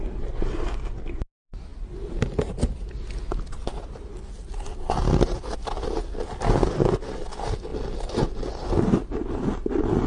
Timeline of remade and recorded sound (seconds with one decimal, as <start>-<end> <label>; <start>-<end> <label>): 0.0-10.1 recorded